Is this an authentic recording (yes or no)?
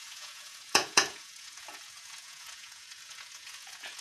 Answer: no